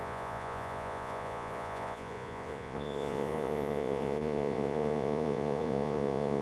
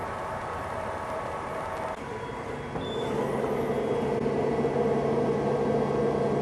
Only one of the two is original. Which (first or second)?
second